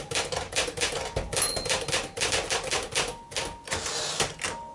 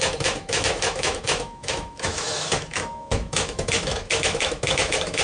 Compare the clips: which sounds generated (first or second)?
second